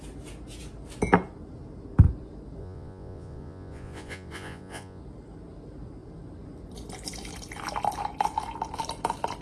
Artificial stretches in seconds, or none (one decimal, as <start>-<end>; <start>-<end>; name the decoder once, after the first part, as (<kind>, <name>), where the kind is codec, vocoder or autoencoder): 2.6-5.0 (vocoder, Vocos)